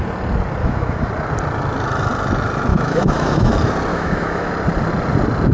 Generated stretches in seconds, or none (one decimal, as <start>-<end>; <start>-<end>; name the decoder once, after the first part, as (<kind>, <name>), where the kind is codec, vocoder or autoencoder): 0.6-1.1 (autoencoder, DAC-VAE); 2.7-3.5; 3.9-4.5